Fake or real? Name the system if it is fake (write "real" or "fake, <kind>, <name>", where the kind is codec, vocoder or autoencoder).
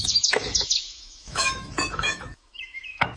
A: fake, autoencoder, DAC-VAE